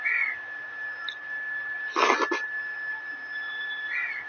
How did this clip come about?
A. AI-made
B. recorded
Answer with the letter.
B